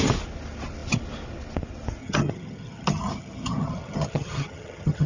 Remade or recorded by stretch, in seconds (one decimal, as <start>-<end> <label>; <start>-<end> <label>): 0.0-2.0 recorded; 2.0-5.1 remade